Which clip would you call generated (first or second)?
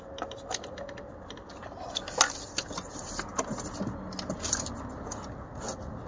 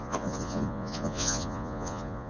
second